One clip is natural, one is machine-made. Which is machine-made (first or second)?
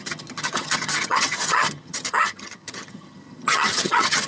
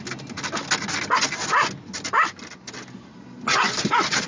first